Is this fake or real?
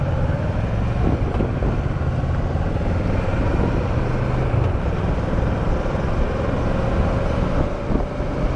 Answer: real